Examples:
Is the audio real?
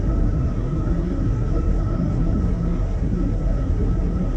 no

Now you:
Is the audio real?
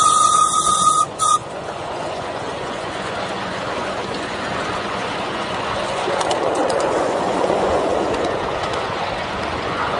no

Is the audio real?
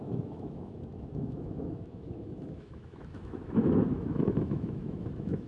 no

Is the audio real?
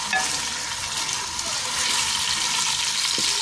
yes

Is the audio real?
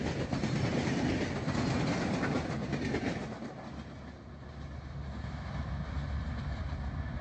yes